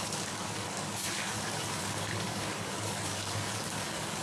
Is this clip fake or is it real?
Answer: fake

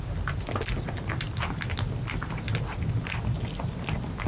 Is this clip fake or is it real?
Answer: real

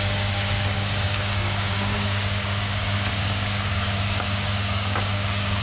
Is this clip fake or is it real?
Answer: fake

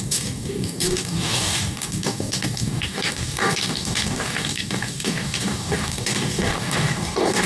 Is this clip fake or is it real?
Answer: fake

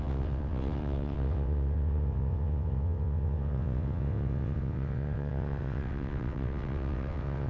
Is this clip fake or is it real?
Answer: fake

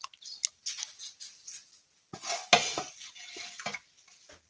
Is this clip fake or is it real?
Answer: real